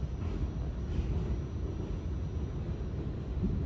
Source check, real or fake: real